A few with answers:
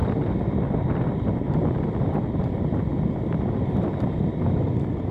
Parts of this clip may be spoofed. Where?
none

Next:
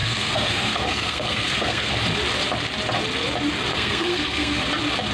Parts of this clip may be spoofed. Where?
0.0-1.9; 3.7-4.6

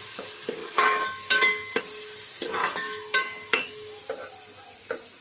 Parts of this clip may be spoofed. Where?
0.6-1.8; 2.6-4.0